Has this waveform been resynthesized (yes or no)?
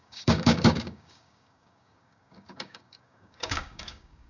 yes